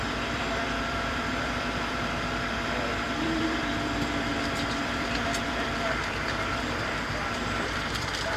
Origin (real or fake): fake